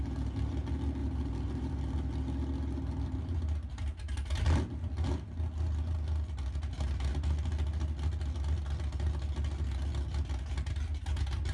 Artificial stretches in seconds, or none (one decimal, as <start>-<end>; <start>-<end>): 1.0-1.8